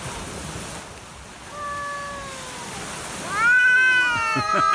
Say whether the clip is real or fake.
real